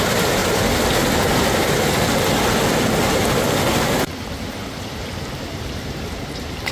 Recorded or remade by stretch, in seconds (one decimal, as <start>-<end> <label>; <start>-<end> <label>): 0.0-0.4 remade; 0.4-4.4 recorded; 4.4-6.7 remade